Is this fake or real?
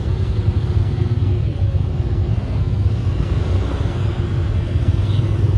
fake